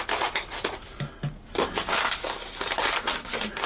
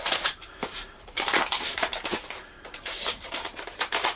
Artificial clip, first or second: second